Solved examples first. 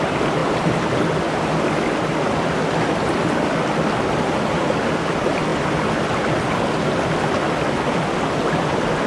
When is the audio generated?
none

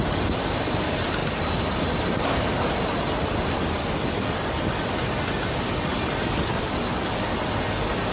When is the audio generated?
1.2-3.8 (vocoder, BigVGAN v2); 6.5-7.2

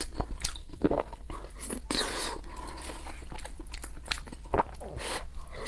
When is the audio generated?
0.6-1.3 (codec, SNAC)

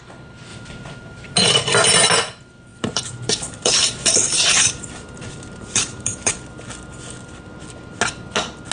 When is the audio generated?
0.5-1.5 (vocoder, BigVGAN v2); 2.7-6.3